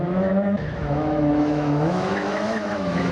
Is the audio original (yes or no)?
no